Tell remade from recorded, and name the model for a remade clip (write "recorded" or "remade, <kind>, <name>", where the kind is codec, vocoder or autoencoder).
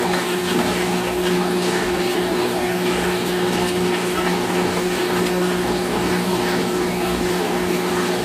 remade, codec, DAC